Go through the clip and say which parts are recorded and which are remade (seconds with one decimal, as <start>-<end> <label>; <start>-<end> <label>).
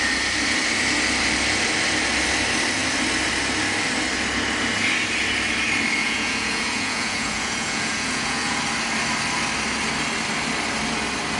0.0-6.0 recorded; 6.0-8.6 remade; 8.6-11.4 recorded